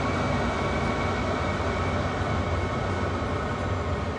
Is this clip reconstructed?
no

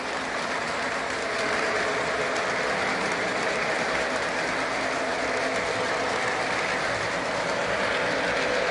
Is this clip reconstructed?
no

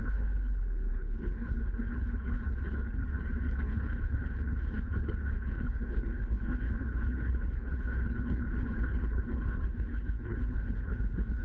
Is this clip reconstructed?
yes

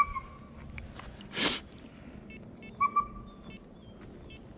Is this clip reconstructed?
no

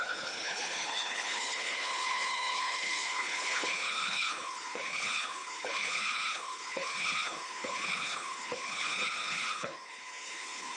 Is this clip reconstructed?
yes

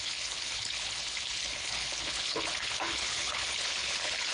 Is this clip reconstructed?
yes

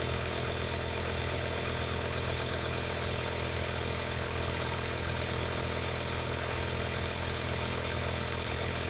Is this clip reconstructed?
yes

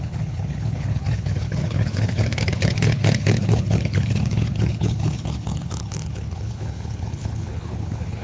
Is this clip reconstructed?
yes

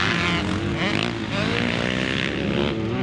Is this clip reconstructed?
no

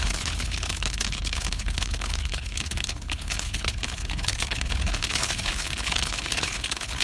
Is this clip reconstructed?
yes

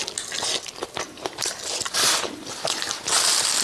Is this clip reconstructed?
no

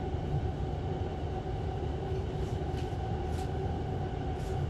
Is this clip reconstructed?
no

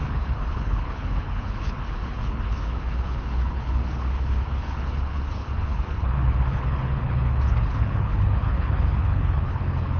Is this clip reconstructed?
yes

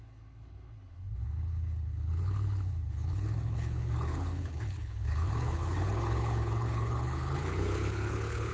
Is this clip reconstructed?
yes